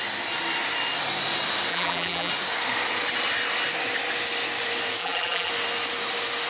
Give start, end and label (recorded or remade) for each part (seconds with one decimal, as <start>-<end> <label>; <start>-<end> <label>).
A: 0.0-1.7 recorded; 1.7-2.3 remade; 2.3-5.0 recorded; 5.0-5.5 remade; 5.5-6.5 recorded

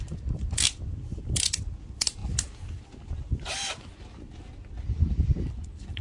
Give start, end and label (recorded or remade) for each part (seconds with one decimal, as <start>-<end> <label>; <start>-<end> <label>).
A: 0.0-2.2 remade; 2.2-6.0 recorded

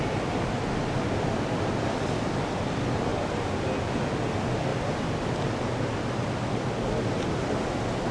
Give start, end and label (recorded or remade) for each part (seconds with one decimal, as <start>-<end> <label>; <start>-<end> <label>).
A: 0.0-3.1 recorded; 3.1-3.8 remade; 3.8-4.7 recorded; 4.7-5.3 remade; 5.3-8.1 recorded